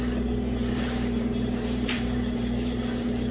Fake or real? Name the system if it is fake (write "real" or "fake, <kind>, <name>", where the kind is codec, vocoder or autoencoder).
fake, vocoder, BigVGAN v2